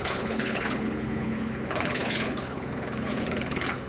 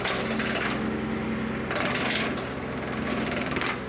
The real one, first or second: second